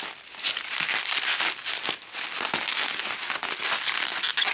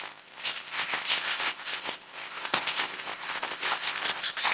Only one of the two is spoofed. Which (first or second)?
second